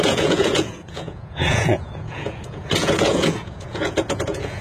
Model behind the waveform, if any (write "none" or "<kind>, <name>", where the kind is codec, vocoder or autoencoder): vocoder, Vocos